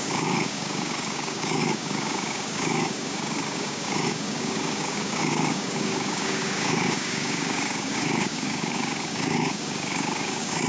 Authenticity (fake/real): fake